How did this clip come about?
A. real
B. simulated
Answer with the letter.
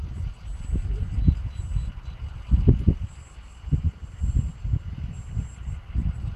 A